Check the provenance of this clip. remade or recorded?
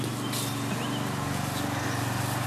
recorded